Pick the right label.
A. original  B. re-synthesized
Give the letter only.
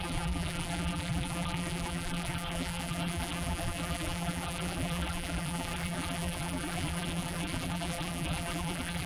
B